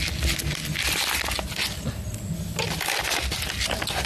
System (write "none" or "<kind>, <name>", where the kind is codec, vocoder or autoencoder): none